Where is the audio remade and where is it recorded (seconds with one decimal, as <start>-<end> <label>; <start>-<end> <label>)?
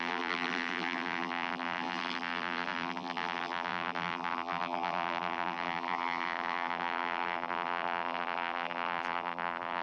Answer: 0.0-9.8 remade